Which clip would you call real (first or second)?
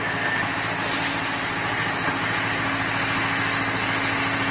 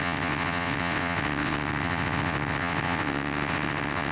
first